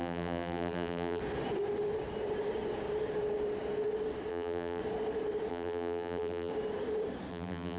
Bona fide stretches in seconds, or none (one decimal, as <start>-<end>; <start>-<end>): 1.2-4.3; 4.8-5.5; 6.5-7.3